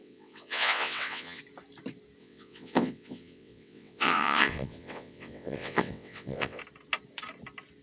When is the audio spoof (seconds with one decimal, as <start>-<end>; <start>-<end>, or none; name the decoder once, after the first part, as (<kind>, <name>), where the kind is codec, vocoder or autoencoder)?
0.0-1.4 (vocoder, WaveNeXt); 2.2-6.6